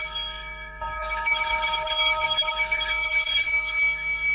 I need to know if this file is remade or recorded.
remade